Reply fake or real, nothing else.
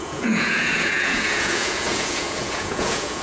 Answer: fake